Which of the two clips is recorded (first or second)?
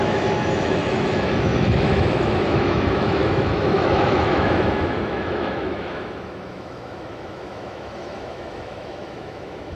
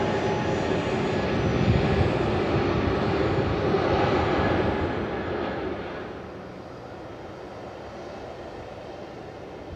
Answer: second